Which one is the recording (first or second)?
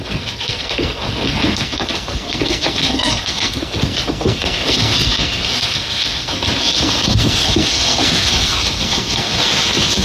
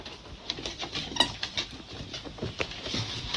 second